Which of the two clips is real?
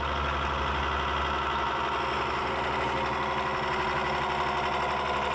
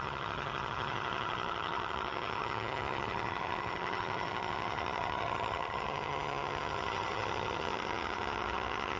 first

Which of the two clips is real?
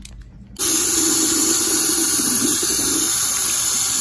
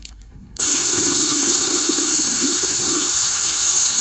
first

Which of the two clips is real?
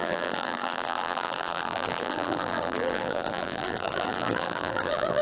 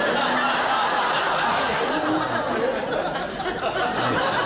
second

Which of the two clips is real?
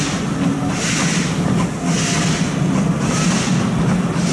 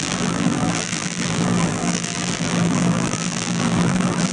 first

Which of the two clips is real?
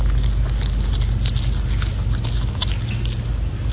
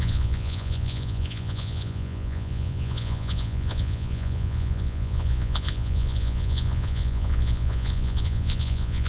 first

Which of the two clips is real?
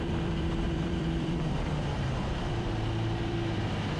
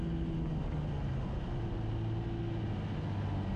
second